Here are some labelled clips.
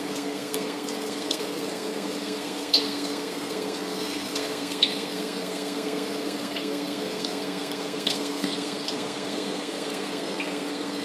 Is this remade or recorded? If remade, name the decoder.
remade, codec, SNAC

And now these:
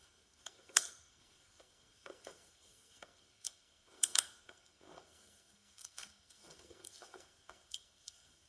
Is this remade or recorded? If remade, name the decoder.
remade, codec, SNAC